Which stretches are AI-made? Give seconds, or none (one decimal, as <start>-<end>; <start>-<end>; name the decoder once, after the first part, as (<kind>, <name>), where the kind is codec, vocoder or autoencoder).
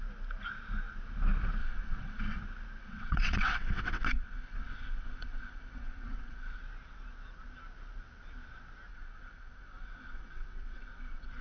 1.6-2.4 (vocoder, WaveNeXt); 2.8-6.6; 8.9-11.4